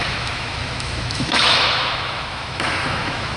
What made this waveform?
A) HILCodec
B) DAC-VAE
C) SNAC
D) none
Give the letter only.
B